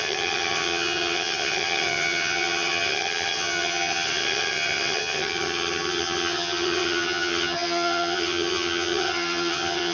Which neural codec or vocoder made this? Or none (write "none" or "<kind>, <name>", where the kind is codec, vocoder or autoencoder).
vocoder, HiFi-GAN